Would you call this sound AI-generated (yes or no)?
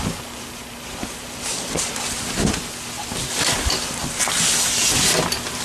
no